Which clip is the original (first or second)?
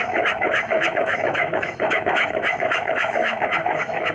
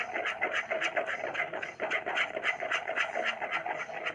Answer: second